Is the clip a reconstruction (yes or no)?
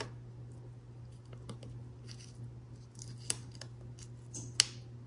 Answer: no